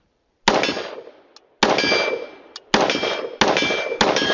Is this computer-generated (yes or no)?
no